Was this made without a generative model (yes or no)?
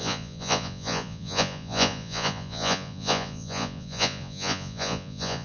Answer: no